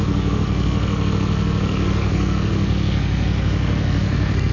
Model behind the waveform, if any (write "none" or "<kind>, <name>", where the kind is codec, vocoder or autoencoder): codec, SNAC